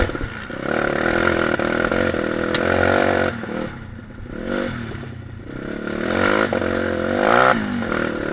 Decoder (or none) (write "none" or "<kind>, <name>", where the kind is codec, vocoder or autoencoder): none